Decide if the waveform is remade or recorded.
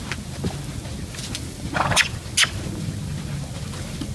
recorded